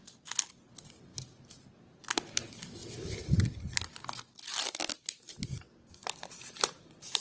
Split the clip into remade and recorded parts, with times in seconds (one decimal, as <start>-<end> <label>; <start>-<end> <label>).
0.0-1.1 recorded; 1.1-2.0 remade; 2.0-2.8 recorded; 2.8-7.2 remade